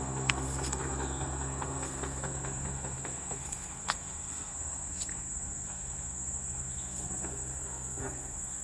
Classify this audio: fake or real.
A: fake